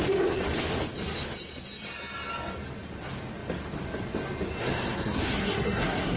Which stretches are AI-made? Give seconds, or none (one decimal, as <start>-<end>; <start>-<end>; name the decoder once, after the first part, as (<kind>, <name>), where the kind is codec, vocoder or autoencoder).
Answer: 4.6-6.2 (codec, SNAC)